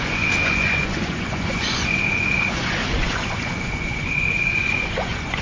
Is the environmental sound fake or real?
fake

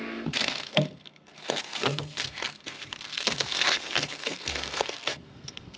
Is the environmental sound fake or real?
fake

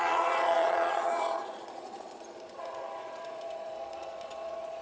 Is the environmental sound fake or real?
fake